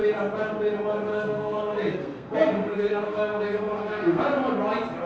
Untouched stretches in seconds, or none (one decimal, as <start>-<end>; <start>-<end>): 0.0-1.1; 4.2-5.1